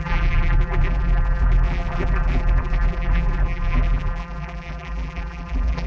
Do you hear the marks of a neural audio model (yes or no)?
yes